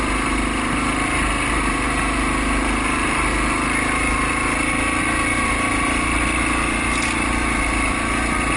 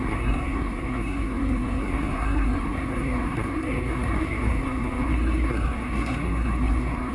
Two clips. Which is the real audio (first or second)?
first